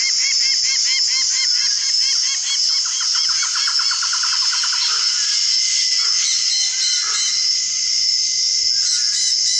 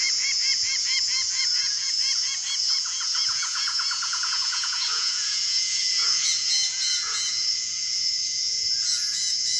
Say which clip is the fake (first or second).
second